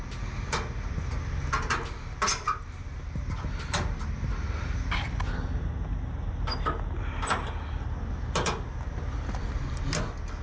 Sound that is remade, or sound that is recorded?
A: recorded